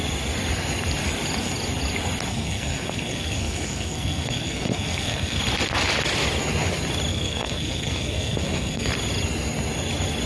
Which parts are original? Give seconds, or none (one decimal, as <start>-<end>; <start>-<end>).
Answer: 0.0-2.3; 5.4-7.1; 8.9-10.3